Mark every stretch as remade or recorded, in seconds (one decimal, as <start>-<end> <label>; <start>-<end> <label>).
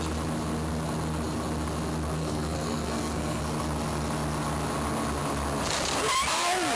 0.0-2.2 recorded; 2.2-3.4 remade; 3.4-6.7 recorded